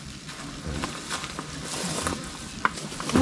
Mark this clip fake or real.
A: real